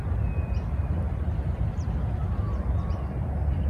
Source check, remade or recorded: recorded